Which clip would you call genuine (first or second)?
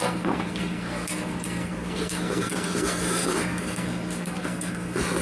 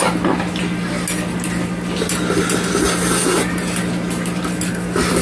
second